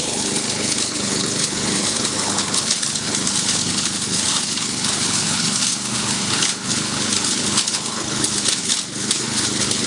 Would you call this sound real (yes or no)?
no